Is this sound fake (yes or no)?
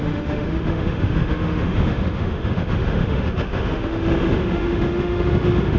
yes